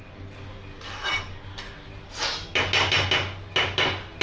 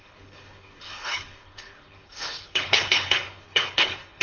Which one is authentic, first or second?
first